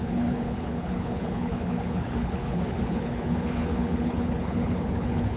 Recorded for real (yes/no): no